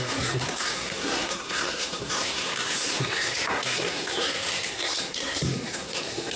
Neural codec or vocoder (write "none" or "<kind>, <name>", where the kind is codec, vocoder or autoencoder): codec, SNAC